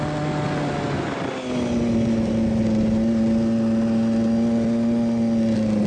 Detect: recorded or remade recorded